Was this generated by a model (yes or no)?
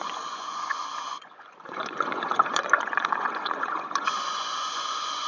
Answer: yes